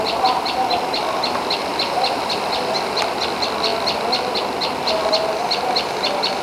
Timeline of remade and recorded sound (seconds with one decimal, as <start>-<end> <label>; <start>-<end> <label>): 0.0-6.4 recorded